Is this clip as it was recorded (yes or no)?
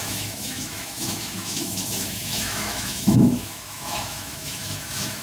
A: no